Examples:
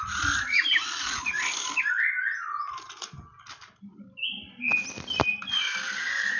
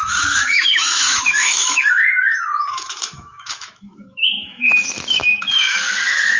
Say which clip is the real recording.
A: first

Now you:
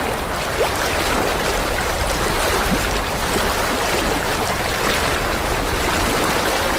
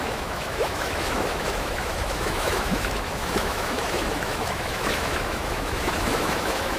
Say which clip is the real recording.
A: first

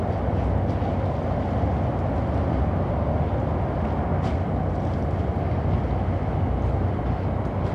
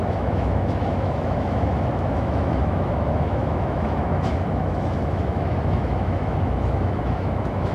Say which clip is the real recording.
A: first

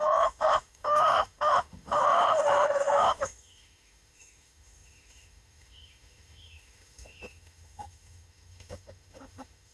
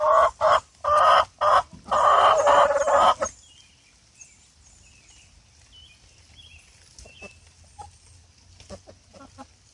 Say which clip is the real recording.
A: second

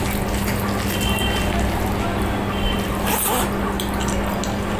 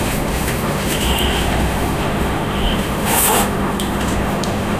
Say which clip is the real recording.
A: first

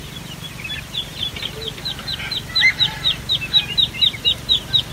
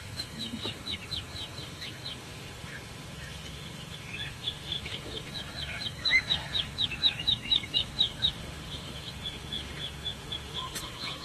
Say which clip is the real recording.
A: first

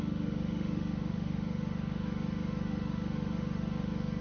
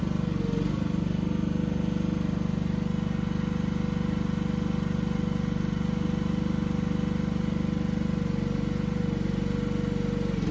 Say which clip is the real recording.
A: second